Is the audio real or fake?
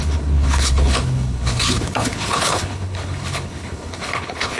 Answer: fake